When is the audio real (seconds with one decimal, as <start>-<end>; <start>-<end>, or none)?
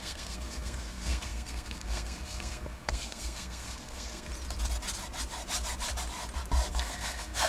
4.3-6.7